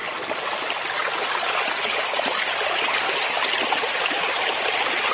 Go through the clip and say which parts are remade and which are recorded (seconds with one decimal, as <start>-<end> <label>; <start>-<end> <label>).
0.0-5.1 recorded